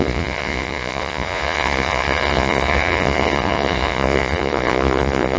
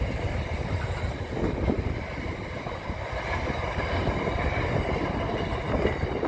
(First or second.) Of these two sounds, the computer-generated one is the first